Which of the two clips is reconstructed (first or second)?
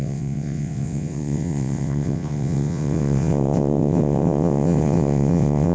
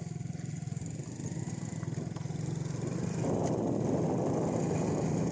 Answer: first